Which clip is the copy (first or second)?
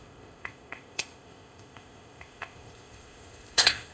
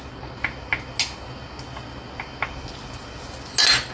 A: first